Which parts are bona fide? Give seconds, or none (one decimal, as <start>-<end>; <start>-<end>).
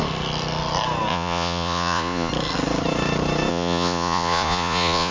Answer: 0.0-1.1; 2.3-3.5